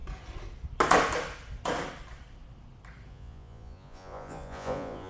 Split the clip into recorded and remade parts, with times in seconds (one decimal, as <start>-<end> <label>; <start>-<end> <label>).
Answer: 0.0-3.1 recorded; 3.1-5.1 remade